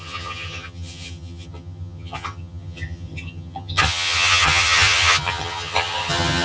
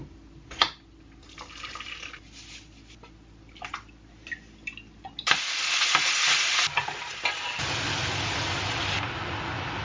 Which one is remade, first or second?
first